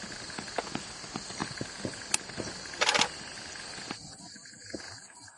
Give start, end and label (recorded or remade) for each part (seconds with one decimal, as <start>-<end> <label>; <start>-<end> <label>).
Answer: 0.0-5.4 recorded